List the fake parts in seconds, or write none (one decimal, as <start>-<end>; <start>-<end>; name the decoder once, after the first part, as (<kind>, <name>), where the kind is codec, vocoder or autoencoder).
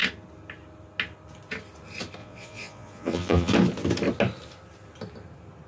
2.2-3.5 (vocoder, Vocos)